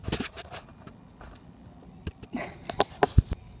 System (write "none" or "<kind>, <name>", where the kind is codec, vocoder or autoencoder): none